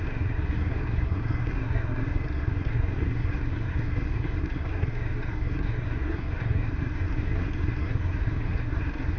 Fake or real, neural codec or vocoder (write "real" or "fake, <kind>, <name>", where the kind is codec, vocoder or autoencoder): fake, codec, SNAC